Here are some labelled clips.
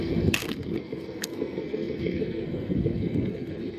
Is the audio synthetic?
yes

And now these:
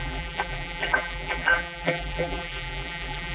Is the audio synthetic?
yes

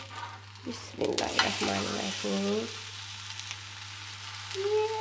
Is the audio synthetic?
no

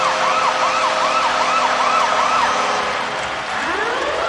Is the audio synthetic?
no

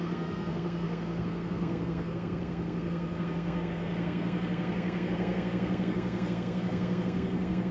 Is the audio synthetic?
yes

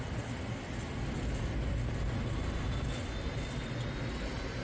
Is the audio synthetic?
no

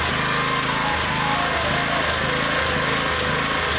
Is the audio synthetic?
no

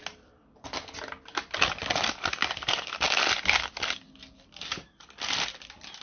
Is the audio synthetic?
no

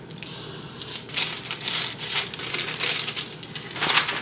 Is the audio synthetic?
no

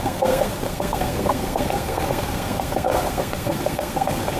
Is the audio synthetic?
yes